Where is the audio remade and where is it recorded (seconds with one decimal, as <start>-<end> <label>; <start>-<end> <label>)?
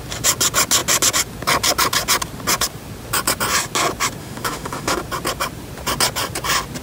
0.0-4.2 recorded; 4.2-5.0 remade; 5.0-6.8 recorded